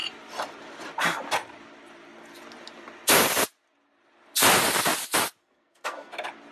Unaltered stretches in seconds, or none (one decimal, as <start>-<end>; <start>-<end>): 0.0-5.4; 6.1-6.5